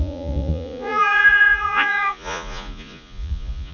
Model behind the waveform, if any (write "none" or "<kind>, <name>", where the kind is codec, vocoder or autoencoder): vocoder, Vocos